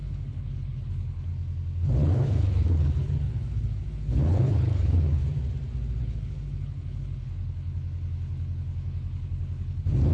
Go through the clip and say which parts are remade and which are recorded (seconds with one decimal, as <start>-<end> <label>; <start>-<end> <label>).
0.0-1.3 remade; 1.3-1.8 recorded; 1.8-5.2 remade; 5.2-6.0 recorded; 6.0-10.1 remade